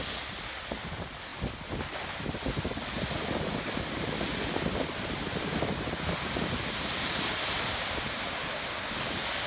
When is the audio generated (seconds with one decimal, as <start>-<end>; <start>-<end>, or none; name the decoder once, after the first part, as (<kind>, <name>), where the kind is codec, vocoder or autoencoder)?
none